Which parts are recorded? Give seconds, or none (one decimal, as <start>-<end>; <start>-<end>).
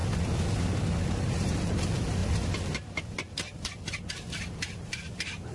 0.0-1.1; 2.2-4.4